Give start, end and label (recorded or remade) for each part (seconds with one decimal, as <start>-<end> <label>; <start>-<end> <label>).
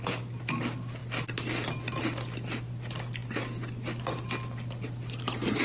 0.0-5.6 recorded